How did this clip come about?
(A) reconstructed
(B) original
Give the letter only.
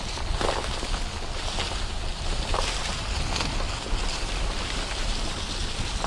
B